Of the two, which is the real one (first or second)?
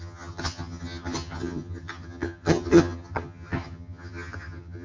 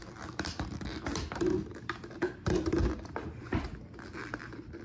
second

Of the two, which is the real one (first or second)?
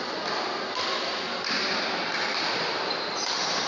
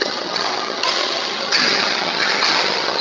first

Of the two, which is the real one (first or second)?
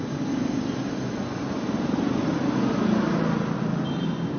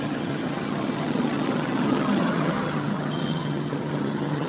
first